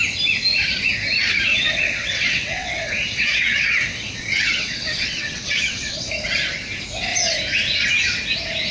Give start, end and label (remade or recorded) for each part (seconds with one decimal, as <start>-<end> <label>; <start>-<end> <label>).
0.0-1.5 recorded; 1.5-6.1 remade; 6.1-8.7 recorded